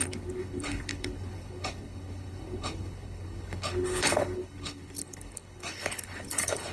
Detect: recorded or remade remade